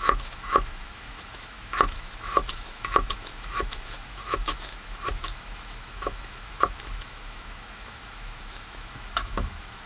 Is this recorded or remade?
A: remade